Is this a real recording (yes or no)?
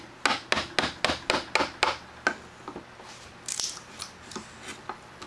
yes